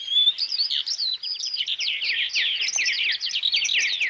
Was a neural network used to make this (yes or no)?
no